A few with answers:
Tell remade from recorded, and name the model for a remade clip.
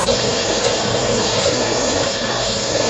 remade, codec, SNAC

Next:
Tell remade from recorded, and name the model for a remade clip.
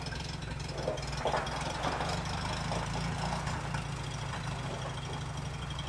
recorded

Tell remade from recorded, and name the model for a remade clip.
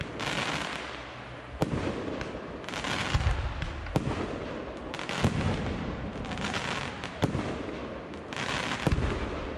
recorded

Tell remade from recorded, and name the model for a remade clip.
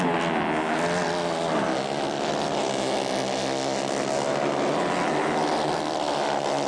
recorded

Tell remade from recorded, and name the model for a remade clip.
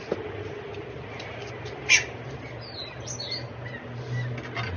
recorded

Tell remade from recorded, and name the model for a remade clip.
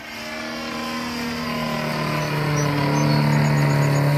recorded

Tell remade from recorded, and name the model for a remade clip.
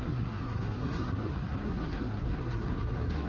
remade, codec, SNAC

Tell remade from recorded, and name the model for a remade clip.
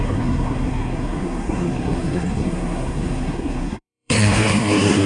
remade, codec, SNAC